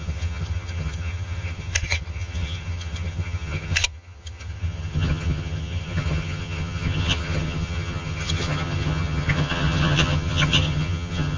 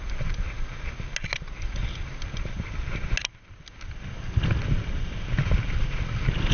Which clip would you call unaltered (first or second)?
second